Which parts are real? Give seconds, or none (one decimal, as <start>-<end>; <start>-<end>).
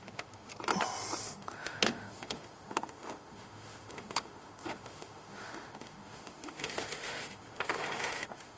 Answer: 0.5-1.2